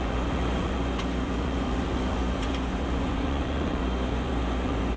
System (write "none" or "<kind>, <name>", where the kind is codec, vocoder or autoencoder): vocoder, Vocos